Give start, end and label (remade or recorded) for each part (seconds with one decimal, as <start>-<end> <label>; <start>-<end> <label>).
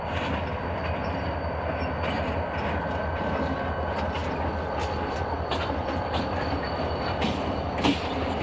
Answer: 0.0-8.4 recorded